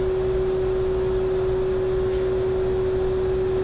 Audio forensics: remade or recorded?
recorded